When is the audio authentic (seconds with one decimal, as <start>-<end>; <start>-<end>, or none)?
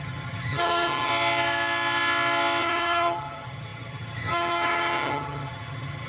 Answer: 1.1-2.6